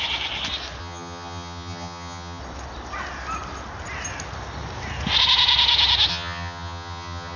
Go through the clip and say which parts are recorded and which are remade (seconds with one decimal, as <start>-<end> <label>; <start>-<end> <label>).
0.0-0.8 recorded; 0.8-2.4 remade; 2.4-6.1 recorded; 6.1-7.4 remade